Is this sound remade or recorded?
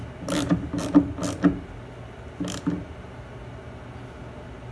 recorded